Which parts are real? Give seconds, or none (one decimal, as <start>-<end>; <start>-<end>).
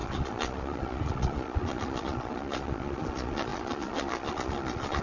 none